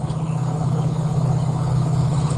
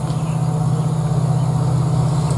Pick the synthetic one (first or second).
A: first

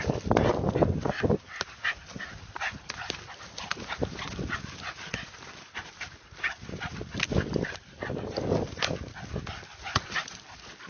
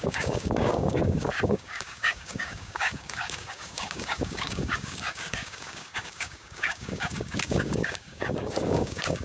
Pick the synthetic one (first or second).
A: second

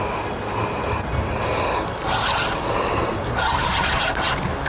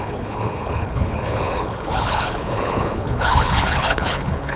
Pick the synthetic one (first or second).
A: second